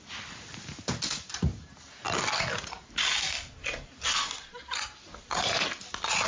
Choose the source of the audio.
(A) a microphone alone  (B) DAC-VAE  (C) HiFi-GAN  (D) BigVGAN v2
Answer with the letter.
A